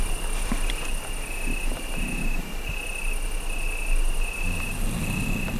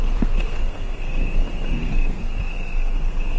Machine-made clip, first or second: second